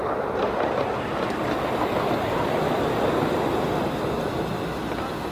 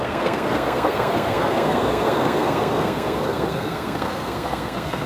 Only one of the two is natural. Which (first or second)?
first